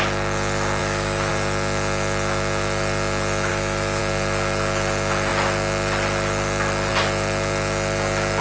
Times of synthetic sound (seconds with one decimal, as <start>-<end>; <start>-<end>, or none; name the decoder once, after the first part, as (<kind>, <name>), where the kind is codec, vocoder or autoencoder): 0.8-1.3 (autoencoder, DAC-VAE); 3.5-4.0